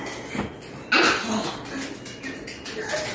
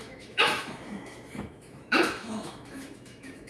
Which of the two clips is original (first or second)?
first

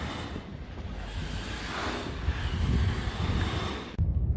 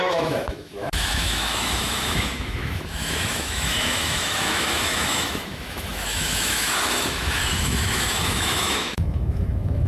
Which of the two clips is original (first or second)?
first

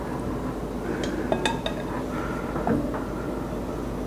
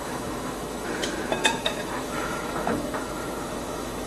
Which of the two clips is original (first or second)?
first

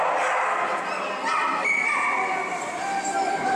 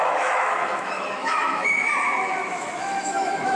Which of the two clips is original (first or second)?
first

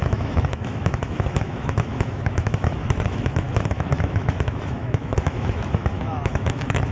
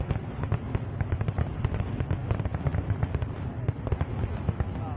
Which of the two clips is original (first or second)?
second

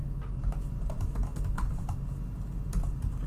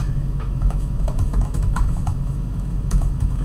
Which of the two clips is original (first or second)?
first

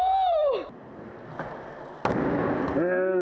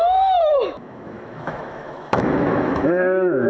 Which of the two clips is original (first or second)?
first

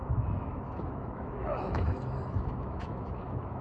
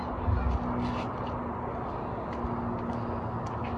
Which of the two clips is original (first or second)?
second